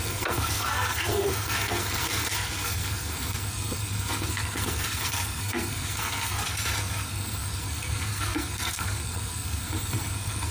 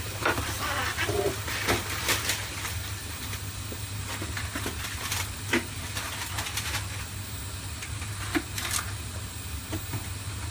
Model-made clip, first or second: first